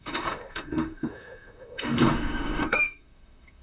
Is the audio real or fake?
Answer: fake